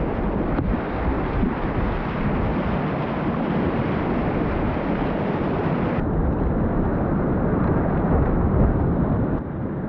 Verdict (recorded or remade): recorded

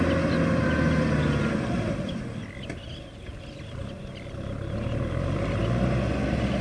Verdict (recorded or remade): recorded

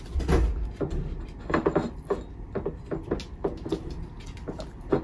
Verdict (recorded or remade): recorded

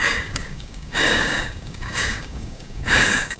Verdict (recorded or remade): remade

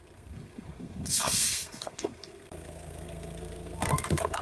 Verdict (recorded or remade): remade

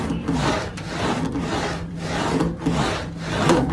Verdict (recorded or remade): remade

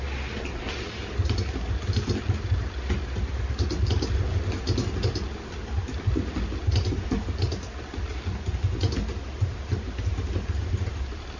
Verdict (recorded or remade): recorded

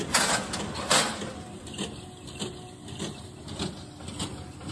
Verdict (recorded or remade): recorded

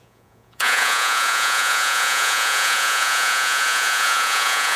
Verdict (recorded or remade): remade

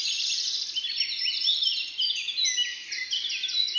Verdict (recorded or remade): recorded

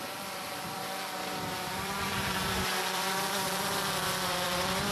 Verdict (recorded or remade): remade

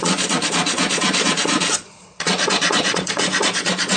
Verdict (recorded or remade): remade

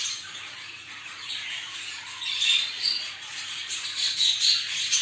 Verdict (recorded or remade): remade